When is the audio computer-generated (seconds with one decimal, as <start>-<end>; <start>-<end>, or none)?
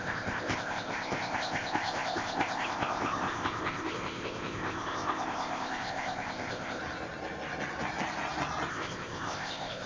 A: 0.0-6.8; 8.7-9.9